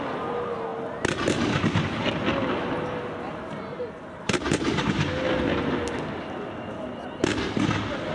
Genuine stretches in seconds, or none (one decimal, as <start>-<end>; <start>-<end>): 0.0-8.1

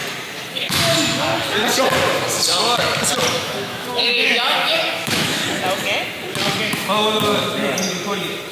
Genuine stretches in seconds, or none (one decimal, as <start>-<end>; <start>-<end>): 0.0-0.5; 1.3-3.3; 5.4-6.6; 7.3-8.5

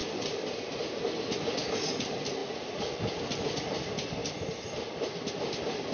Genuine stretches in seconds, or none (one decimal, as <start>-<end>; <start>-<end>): 1.0-2.4; 3.0-4.2; 4.9-5.9

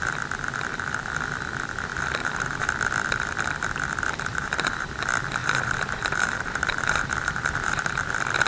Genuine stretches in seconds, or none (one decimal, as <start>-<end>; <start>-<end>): 0.0-1.9; 2.7-4.3; 5.0-5.4; 8.1-8.5

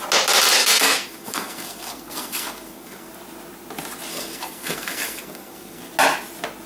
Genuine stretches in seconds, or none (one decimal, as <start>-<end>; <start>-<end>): 0.0-0.6; 3.1-4.1; 5.9-6.7

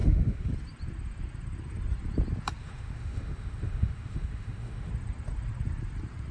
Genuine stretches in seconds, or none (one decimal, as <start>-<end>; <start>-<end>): 0.5-2.6; 4.9-6.3

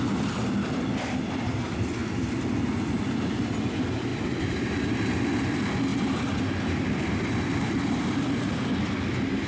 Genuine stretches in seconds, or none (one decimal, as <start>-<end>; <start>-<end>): 0.0-4.1; 5.4-5.9; 8.5-9.5

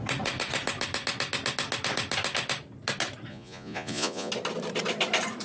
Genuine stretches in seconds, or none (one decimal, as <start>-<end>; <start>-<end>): 0.0-3.3; 4.3-5.4